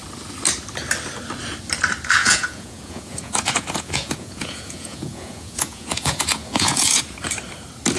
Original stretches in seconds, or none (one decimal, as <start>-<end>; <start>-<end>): 0.0-2.2; 7.0-8.0